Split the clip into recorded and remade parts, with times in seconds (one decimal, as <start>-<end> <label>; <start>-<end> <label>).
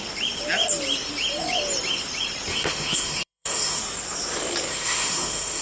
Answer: 0.0-2.5 recorded; 2.5-3.8 remade; 3.8-4.7 recorded; 4.7-5.6 remade